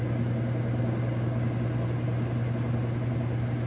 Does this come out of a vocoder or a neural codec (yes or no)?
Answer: no